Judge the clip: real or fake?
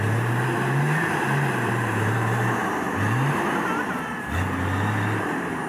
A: fake